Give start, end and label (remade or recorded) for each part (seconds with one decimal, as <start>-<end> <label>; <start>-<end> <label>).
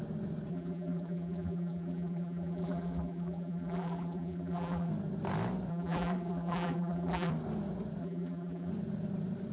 0.0-0.5 recorded; 0.5-4.9 remade; 4.9-5.7 recorded; 5.7-7.3 remade; 7.3-8.0 recorded; 8.0-8.7 remade; 8.7-9.5 recorded